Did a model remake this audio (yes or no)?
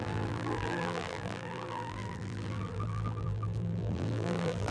yes